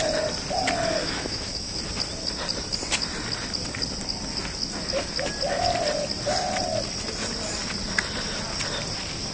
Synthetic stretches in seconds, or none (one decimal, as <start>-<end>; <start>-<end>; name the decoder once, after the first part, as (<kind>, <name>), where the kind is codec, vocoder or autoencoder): 1.0-1.8 (autoencoder, DAC-VAE)